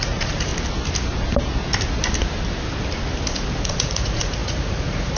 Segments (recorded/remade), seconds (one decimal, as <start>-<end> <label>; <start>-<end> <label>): 0.0-0.5 remade; 0.5-3.6 recorded; 3.6-5.2 remade

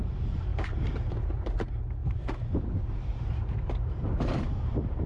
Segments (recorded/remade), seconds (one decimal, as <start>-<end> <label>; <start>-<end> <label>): 0.0-5.1 remade

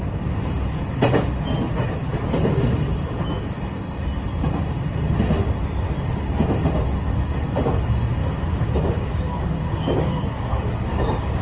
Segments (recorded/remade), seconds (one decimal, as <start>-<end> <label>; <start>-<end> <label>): 0.0-8.2 recorded; 8.2-11.4 remade

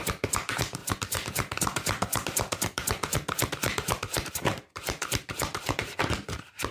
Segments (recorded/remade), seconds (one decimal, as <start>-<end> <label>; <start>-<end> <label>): 0.0-6.7 remade

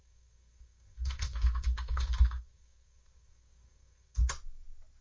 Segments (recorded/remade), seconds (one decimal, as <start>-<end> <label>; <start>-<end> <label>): 0.0-4.2 remade; 4.2-5.0 recorded